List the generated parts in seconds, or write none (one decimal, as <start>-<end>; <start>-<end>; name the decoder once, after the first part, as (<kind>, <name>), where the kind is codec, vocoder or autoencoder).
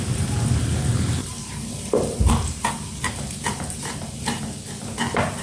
1.2-4.4 (vocoder, BigVGAN v2)